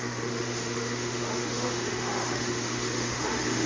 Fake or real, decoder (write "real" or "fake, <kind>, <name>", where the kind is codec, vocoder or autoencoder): fake, autoencoder, DAC-VAE